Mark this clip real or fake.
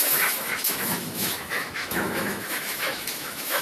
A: fake